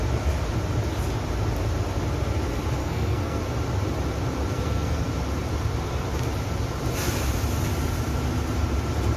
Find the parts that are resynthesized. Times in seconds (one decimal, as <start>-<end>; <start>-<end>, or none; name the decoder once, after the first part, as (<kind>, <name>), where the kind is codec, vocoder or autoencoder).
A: 2.8-3.4 (codec, SNAC); 4.5-5.1

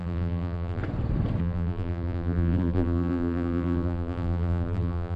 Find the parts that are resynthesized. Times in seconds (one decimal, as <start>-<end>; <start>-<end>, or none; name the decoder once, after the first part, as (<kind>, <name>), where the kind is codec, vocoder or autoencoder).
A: 0.0-0.8 (vocoder, BigVGAN v2); 1.4-5.2

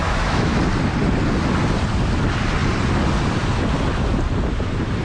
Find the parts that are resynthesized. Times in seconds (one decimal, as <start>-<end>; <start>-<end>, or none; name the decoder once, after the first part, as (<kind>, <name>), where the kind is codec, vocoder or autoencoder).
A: 0.0-0.6 (autoencoder, DAC-VAE)

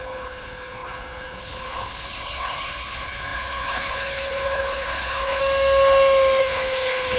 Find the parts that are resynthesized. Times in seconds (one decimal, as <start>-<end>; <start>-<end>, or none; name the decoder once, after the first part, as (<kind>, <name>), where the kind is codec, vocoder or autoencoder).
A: 0.0-5.4 (codec, HILCodec); 6.4-7.2

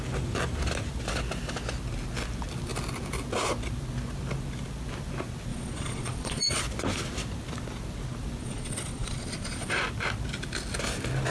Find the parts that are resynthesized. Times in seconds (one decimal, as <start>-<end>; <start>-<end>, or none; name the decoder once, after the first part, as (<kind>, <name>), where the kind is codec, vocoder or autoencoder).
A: 5.5-6.6 (vocoder, Vocos); 8.4-9.8

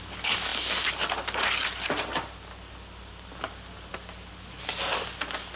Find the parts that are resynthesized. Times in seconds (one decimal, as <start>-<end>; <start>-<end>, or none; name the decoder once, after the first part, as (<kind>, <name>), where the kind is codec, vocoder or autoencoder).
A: none

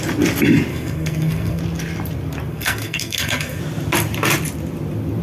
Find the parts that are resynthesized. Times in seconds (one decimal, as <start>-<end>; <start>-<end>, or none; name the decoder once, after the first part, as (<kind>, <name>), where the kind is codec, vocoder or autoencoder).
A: 0.7-1.6 (codec, SNAC); 2.5-3.6

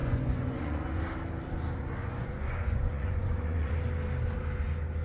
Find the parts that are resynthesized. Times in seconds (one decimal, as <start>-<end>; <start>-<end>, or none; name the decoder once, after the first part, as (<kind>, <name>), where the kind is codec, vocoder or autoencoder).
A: 0.0-1.0 (vocoder, Vocos); 2.0-3.7